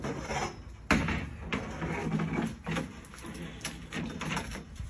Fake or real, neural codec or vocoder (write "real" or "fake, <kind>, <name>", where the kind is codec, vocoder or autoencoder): real